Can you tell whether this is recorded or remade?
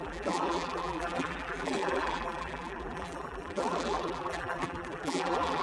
remade